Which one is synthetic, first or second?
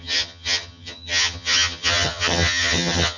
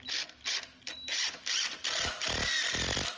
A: first